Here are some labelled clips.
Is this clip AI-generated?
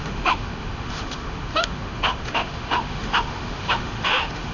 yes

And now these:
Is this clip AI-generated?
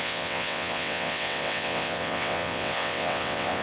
yes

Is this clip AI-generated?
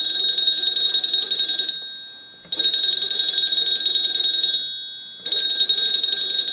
no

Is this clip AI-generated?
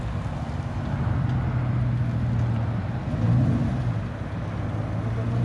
no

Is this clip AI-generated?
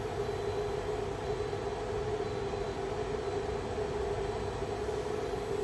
no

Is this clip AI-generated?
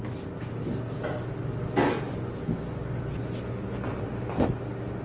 no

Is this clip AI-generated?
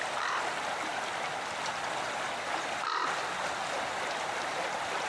no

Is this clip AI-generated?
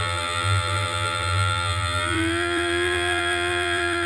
yes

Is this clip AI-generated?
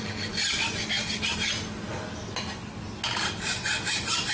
no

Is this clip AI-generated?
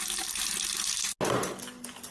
no